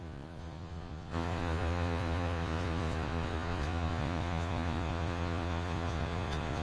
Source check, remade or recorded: remade